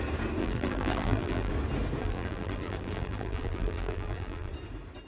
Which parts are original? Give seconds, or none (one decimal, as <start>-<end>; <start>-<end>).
0.0-0.4; 1.5-2.0; 4.5-5.1